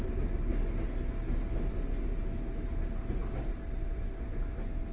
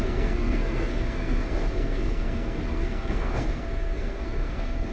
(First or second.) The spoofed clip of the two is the second